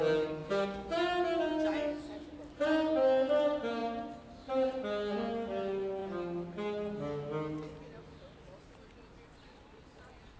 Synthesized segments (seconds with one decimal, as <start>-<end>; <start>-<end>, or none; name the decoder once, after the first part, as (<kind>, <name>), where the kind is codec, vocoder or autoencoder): 0.4-0.9 (codec, DAC)